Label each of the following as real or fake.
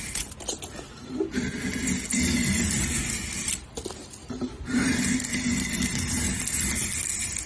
real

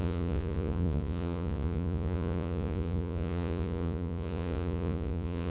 fake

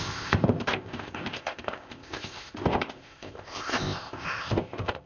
fake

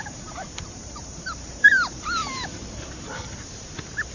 fake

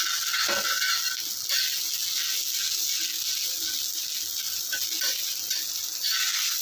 real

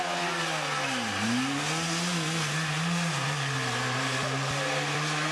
real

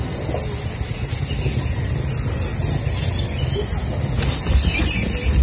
real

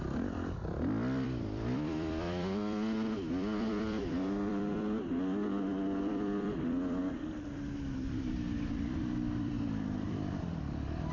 fake